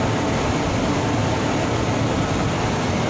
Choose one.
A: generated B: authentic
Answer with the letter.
B